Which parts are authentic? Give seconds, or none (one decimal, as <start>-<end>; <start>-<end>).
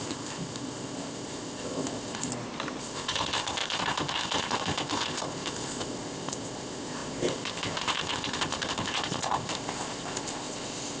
2.3-2.8